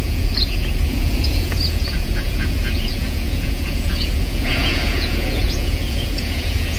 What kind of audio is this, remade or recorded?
remade